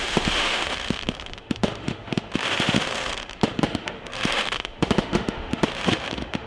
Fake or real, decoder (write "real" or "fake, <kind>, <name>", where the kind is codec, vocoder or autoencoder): fake, autoencoder, DAC-VAE